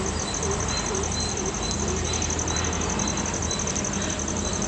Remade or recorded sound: recorded